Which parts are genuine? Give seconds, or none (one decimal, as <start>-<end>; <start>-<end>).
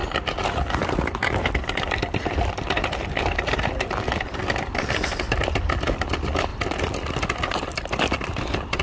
4.5-8.8